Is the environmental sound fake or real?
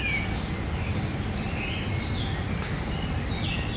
real